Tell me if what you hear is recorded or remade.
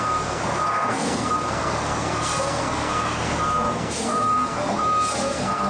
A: remade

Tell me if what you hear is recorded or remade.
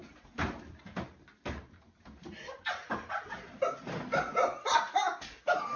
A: recorded